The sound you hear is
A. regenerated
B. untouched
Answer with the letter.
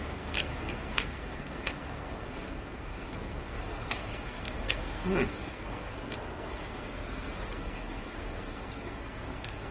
A